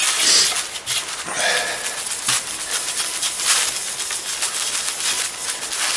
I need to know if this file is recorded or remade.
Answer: recorded